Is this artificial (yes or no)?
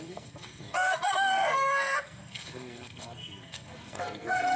yes